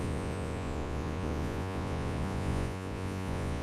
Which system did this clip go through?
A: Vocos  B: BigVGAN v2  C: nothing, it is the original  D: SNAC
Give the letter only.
A